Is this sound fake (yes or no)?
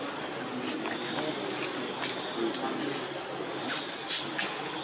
no